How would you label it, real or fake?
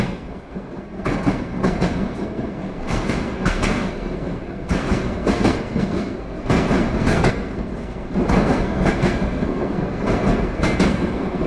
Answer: fake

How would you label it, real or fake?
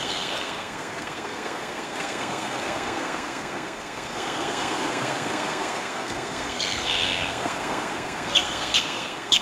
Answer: fake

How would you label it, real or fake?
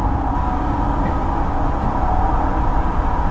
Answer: real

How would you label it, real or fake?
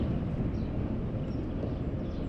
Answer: real